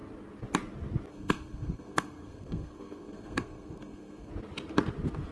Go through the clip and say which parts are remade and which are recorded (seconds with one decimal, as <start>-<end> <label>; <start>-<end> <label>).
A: 0.0-1.1 recorded; 1.1-4.3 remade; 4.3-5.3 recorded